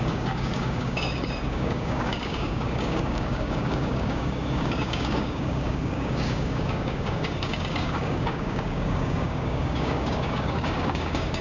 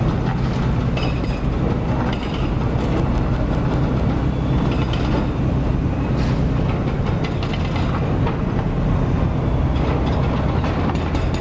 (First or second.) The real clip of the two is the second